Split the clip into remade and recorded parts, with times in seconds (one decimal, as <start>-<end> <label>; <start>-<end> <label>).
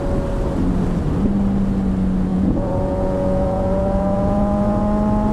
0.0-2.3 recorded; 2.3-4.8 remade; 4.8-5.3 recorded